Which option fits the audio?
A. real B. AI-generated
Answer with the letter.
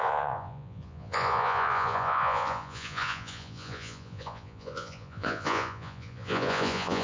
B